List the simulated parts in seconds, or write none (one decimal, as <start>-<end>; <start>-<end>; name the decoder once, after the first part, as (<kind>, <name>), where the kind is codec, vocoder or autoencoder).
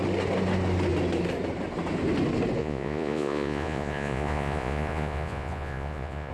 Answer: 2.6-6.3 (vocoder, Vocos)